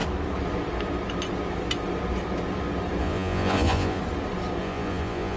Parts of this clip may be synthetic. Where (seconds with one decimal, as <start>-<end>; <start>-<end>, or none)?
3.0-4.0; 4.6-5.4